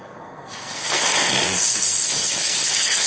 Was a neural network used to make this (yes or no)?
yes